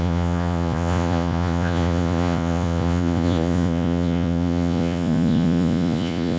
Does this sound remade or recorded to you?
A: remade